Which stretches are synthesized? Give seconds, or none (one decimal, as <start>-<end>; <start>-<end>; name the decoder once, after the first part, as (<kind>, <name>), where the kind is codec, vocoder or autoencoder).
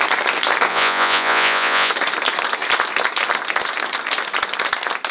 0.7-1.9 (vocoder, Vocos)